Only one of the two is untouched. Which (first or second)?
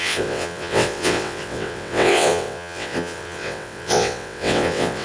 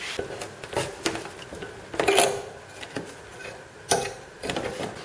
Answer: second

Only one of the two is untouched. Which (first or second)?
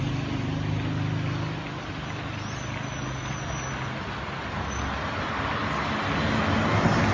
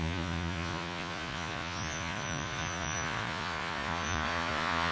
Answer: first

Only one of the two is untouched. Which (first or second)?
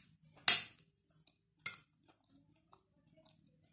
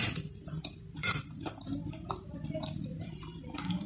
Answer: first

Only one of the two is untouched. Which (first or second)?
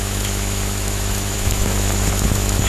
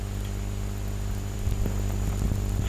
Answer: second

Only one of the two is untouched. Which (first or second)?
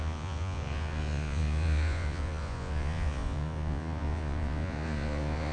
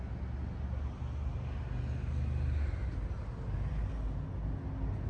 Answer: second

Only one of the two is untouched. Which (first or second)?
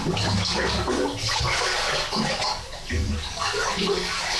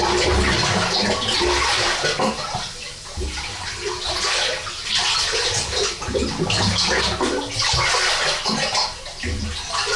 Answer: second